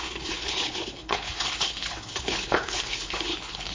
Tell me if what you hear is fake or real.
fake